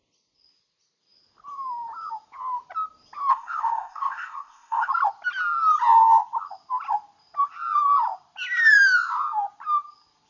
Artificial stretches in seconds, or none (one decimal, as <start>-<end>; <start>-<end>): 3.3-4.9